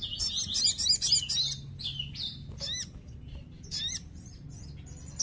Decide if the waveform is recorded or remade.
recorded